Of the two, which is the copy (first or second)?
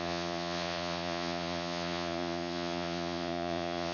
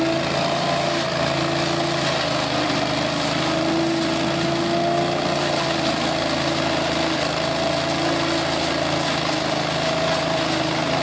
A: first